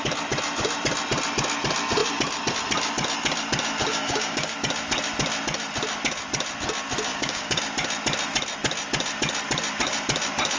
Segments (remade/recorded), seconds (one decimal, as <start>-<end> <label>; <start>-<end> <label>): 0.0-3.9 recorded; 3.9-4.5 remade; 4.5-7.1 recorded; 7.1-7.6 remade; 7.6-10.6 recorded